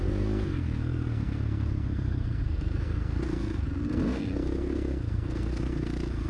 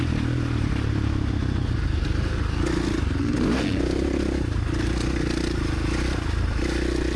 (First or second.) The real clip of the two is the second